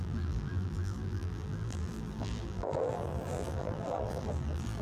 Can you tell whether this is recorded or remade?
remade